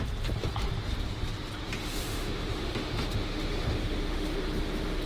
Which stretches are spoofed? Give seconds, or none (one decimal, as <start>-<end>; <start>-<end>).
1.8-4.4